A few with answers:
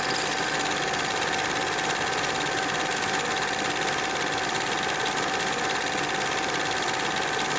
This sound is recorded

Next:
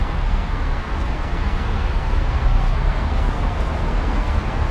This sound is remade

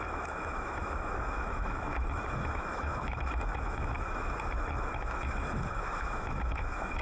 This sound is remade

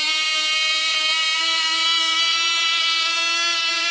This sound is remade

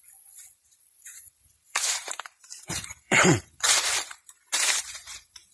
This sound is remade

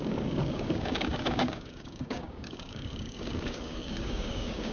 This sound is remade